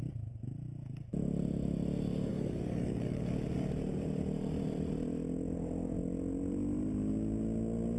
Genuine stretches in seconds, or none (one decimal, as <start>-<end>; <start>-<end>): 0.0-2.3; 3.2-8.0